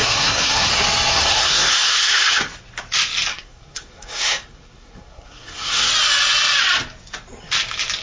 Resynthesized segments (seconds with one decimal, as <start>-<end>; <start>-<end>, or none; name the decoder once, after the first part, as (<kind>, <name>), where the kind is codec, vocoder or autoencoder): 0.0-0.7 (codec, SNAC); 1.1-2.5; 3.3-5.9